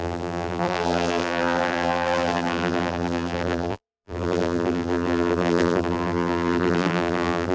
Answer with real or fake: fake